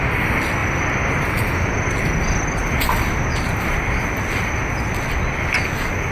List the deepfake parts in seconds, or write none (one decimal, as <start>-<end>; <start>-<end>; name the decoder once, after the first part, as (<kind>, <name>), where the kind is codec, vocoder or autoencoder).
none